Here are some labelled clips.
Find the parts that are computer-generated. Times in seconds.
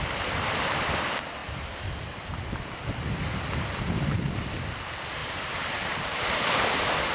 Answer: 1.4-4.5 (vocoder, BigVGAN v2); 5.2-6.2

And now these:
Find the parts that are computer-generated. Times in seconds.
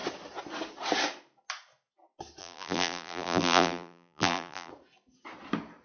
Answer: 2.4-4.7 (vocoder, BigVGAN v2)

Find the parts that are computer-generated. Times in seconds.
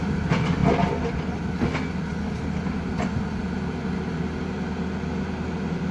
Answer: none